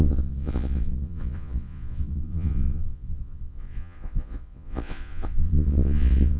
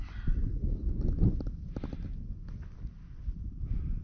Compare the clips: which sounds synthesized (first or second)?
first